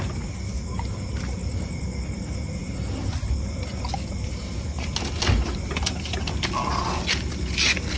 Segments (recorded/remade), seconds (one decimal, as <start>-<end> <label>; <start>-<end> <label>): 0.0-8.0 recorded

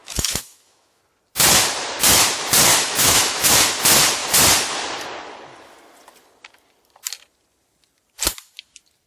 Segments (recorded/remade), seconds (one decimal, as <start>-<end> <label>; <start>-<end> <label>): 0.0-1.0 remade; 1.0-2.7 recorded; 2.7-3.5 remade; 3.5-9.1 recorded

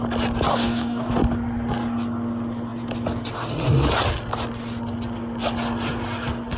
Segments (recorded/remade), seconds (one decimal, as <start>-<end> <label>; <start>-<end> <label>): 0.0-0.5 recorded; 0.5-1.1 remade; 1.1-6.6 recorded

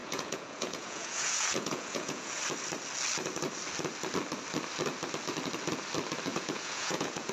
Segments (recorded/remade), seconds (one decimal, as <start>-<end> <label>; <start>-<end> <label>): 0.0-2.4 remade; 2.4-6.3 recorded; 6.3-7.3 remade